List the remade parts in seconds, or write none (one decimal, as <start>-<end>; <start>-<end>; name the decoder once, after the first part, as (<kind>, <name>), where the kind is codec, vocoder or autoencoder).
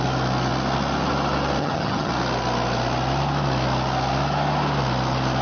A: 1.6-2.1 (vocoder, HiFi-GAN)